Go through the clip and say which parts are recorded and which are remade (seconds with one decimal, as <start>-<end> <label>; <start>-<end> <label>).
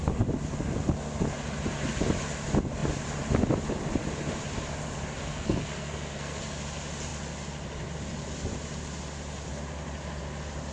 0.0-5.2 recorded; 5.2-6.4 remade; 6.4-10.7 recorded